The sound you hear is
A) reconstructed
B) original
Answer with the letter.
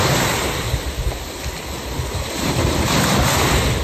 B